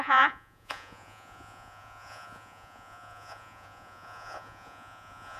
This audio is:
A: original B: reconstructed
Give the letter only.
B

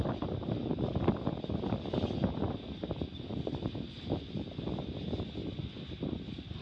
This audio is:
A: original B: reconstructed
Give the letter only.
A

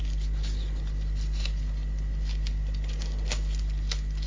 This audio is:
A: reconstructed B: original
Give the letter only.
B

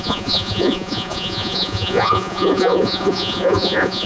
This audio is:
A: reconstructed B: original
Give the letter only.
A